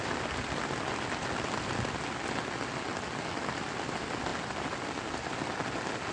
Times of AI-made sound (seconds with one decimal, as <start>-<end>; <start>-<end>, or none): none